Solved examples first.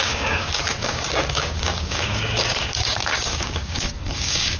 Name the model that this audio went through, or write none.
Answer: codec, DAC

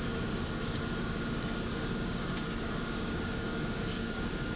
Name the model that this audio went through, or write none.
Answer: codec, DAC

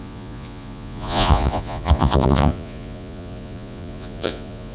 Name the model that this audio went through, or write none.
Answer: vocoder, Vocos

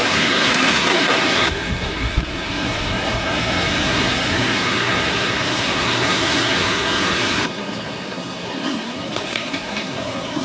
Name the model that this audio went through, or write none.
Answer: codec, SNAC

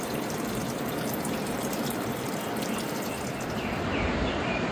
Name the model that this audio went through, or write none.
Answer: vocoder, BigVGAN v2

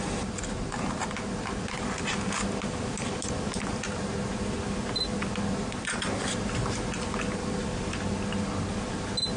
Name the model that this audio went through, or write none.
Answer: none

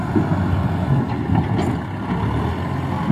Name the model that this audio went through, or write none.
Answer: none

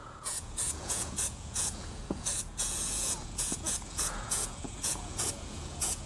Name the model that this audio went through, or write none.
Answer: vocoder, Vocos